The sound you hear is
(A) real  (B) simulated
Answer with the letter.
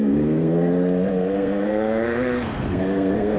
B